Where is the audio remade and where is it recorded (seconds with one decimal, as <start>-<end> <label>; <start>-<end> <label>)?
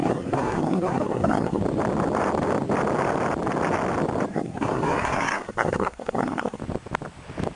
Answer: 0.0-1.6 remade; 1.6-4.3 recorded; 4.3-6.6 remade; 6.6-7.6 recorded